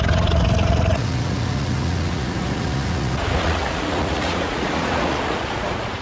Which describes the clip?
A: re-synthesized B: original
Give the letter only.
A